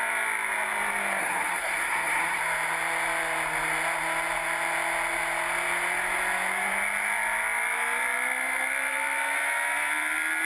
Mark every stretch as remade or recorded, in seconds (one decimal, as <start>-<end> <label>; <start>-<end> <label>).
0.0-1.2 recorded; 1.2-2.4 remade; 2.4-10.4 recorded